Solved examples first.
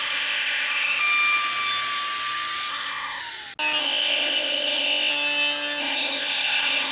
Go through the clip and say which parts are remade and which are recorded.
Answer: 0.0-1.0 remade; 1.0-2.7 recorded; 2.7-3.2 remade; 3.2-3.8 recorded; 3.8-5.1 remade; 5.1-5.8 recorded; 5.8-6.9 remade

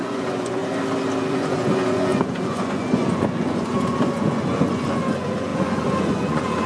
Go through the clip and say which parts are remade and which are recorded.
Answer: 0.0-0.6 remade; 0.6-1.3 recorded; 1.3-6.7 remade

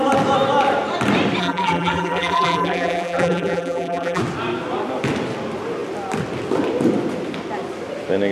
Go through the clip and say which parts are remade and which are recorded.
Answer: 0.0-1.4 recorded; 1.4-4.2 remade; 4.2-8.3 recorded

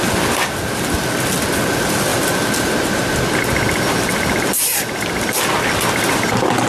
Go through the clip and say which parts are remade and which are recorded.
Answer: 0.0-6.7 recorded

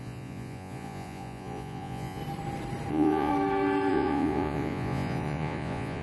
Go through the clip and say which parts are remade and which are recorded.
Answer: 0.0-2.2 remade; 2.2-2.9 recorded; 2.9-3.3 remade; 3.3-3.9 recorded; 3.9-6.0 remade

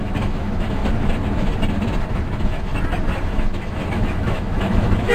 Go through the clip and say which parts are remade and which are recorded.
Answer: 0.0-0.8 remade; 0.8-2.1 recorded; 2.1-2.7 remade; 2.7-3.2 recorded; 3.2-5.1 remade